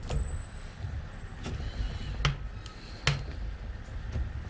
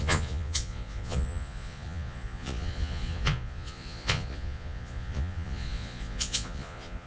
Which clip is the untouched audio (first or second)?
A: first